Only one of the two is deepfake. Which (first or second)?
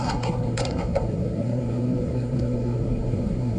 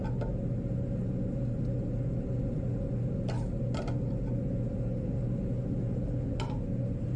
first